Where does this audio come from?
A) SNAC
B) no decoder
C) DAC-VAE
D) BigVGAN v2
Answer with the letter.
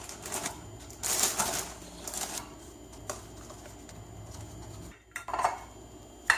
B